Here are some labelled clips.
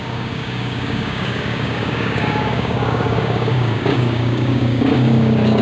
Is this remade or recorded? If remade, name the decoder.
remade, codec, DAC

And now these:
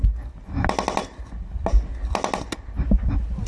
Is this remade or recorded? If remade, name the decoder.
recorded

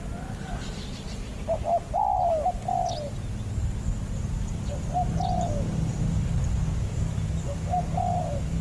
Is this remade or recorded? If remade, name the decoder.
recorded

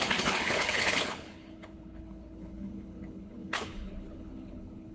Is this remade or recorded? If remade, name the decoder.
remade, codec, HILCodec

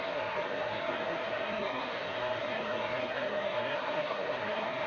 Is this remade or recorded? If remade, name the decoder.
remade, codec, SNAC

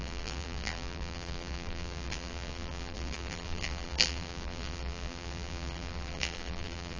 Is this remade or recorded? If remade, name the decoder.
remade, vocoder, BigVGAN v2